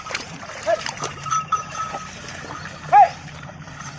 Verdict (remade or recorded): remade